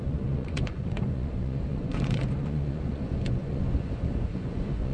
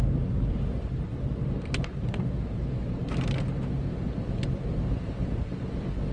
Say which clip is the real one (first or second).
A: second